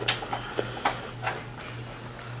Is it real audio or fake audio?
real